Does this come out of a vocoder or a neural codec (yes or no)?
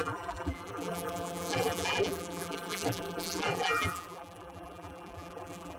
yes